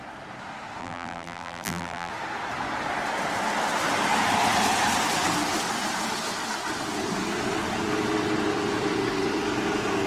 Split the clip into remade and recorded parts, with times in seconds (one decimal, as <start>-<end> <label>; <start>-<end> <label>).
0.0-0.8 recorded; 0.8-2.1 remade; 2.1-10.1 recorded